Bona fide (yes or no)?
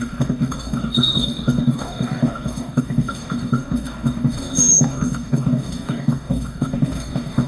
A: no